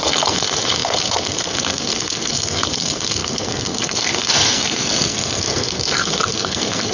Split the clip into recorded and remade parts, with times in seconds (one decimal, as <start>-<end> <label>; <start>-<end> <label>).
0.0-6.9 remade